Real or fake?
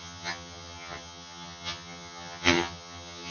fake